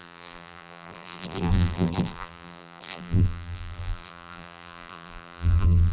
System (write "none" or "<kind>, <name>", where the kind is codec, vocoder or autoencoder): vocoder, BigVGAN v2